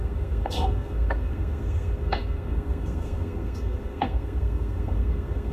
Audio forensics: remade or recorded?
remade